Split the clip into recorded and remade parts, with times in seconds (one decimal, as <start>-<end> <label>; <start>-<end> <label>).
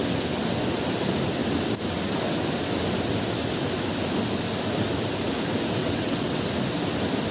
0.0-5.8 recorded; 5.8-6.4 remade; 6.4-7.3 recorded